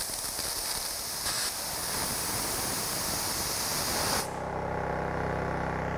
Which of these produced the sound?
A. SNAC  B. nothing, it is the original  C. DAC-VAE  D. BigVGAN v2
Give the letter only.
B